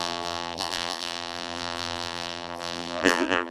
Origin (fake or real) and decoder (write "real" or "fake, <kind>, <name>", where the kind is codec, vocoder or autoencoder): fake, vocoder, BigVGAN v2